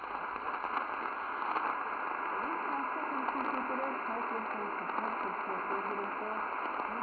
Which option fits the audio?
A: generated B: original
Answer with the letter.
B